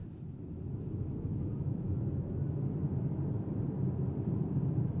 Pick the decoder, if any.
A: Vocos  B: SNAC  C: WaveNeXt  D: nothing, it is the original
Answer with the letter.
D